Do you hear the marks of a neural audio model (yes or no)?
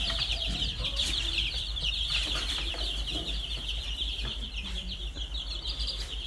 yes